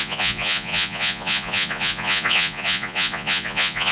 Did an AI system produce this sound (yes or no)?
yes